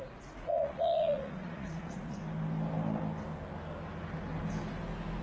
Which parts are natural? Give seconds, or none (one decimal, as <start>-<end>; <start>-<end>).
2.2-5.2